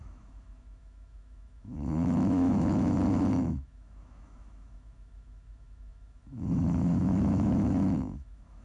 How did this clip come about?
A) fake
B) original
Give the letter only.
A